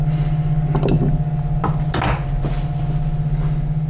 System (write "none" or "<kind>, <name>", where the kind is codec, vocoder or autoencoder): none